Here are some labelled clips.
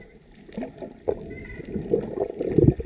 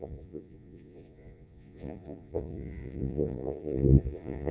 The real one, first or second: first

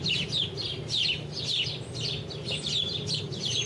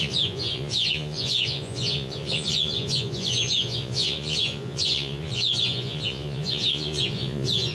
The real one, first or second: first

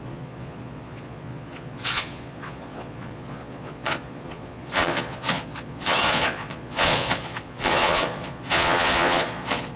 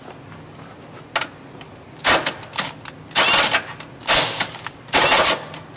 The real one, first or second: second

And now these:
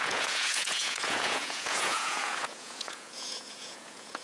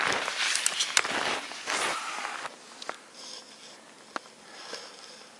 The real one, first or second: second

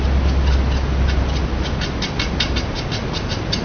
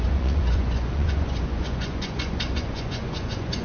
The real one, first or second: first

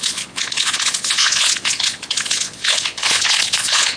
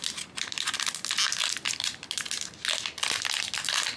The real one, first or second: second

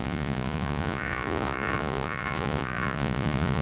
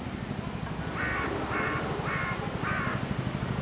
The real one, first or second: second